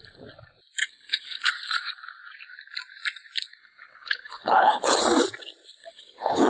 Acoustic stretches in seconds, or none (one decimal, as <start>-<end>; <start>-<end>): 0.0-0.8; 1.5-3.6; 5.0-5.8